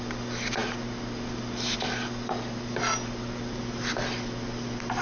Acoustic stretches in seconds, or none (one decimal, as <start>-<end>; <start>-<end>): 0.0-5.0